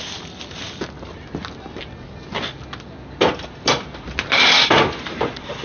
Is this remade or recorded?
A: recorded